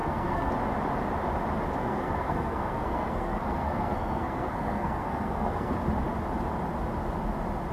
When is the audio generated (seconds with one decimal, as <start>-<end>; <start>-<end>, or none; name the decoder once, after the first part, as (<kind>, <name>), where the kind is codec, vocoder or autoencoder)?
0.0-0.5 (codec, SNAC); 1.8-5.7